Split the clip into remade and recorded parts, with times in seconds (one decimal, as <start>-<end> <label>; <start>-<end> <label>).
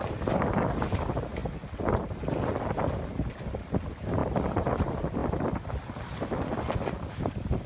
0.0-4.2 recorded; 4.2-4.8 remade; 4.8-5.2 recorded; 5.2-7.7 remade